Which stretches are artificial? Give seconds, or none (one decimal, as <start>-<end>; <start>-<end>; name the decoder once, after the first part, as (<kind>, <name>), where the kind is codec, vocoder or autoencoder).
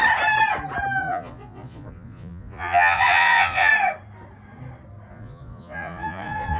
1.0-3.7 (vocoder, Vocos); 5.1-6.6